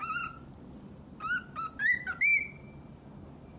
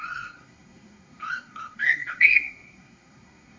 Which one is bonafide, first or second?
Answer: first